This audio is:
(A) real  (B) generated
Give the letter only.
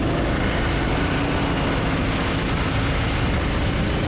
A